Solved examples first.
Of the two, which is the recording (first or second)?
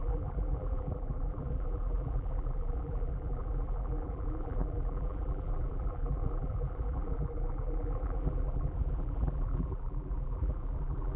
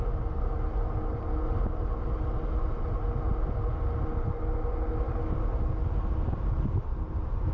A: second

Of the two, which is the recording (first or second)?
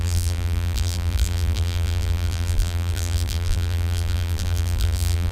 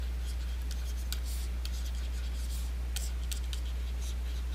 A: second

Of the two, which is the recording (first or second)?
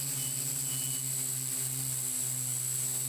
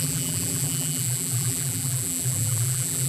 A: first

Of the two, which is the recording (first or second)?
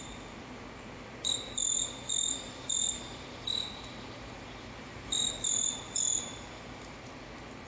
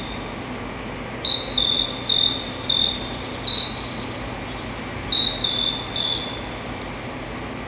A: second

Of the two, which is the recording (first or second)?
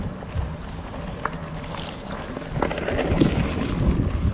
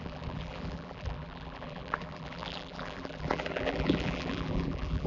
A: first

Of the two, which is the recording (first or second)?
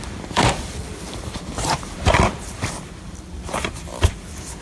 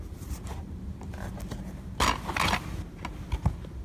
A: second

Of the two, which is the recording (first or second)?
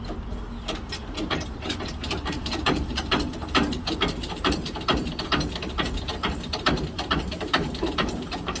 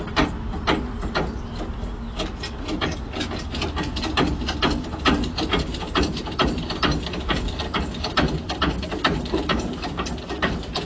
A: second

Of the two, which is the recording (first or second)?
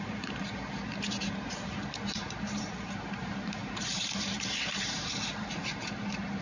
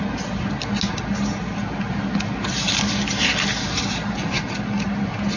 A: second